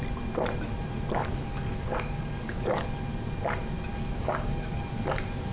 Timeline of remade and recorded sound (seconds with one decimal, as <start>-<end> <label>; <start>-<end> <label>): 0.0-1.2 recorded; 1.2-3.0 remade; 3.0-3.9 recorded; 3.9-5.0 remade; 5.0-5.5 recorded